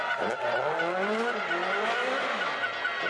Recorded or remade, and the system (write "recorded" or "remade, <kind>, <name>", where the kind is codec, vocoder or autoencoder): remade, vocoder, BigVGAN v2